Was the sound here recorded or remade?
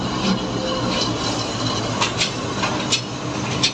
recorded